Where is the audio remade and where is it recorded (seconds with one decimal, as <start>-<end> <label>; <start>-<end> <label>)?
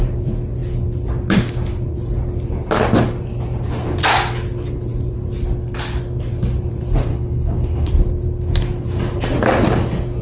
0.0-7.1 recorded; 7.1-7.9 remade; 7.9-10.2 recorded